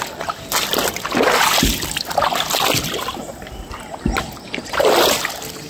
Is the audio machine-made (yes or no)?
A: no